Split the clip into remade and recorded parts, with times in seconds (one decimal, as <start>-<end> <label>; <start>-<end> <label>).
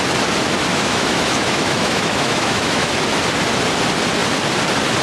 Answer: 0.0-0.7 recorded; 0.7-2.9 remade; 2.9-5.0 recorded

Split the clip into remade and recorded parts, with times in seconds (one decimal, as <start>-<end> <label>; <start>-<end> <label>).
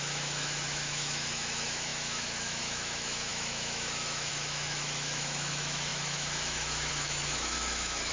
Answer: 0.0-8.1 remade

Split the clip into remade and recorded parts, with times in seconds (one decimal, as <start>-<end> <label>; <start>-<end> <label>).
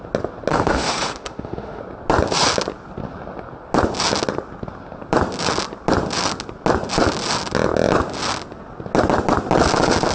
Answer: 0.0-0.5 recorded; 0.5-1.8 remade; 1.8-10.1 recorded